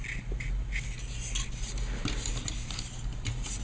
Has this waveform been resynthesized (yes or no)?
no